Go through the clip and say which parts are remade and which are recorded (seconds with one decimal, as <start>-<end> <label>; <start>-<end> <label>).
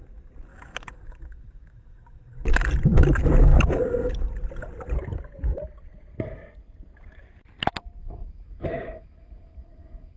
0.0-0.5 recorded; 0.5-2.2 remade; 2.2-8.0 recorded; 8.0-10.2 remade